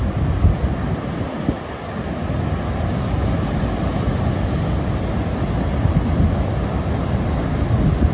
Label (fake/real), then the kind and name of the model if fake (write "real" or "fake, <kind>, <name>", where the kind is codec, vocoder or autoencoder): real